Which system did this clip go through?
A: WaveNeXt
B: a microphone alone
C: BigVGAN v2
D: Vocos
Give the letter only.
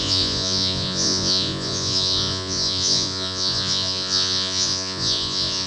D